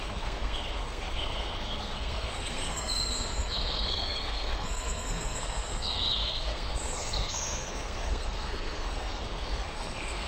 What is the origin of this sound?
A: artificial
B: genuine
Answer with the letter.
A